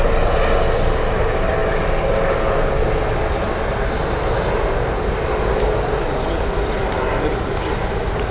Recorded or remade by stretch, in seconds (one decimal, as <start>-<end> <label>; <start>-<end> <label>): 0.0-8.3 recorded